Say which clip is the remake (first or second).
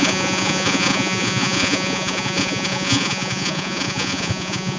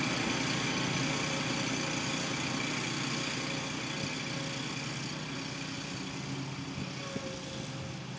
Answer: first